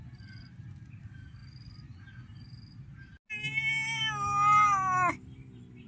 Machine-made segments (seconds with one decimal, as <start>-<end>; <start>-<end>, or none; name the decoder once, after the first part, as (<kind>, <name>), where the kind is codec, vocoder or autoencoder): none